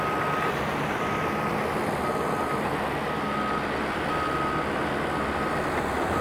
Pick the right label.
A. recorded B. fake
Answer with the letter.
A